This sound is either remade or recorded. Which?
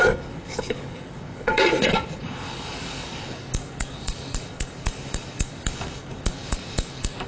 remade